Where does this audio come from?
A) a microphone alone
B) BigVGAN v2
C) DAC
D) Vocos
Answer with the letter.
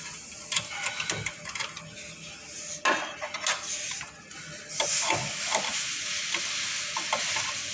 A